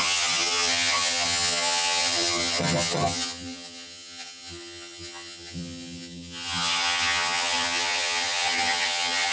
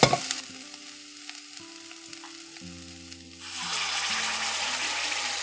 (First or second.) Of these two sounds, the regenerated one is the first